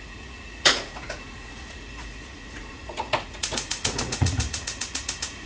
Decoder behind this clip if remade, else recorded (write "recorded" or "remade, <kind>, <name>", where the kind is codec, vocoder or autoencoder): remade, vocoder, Vocos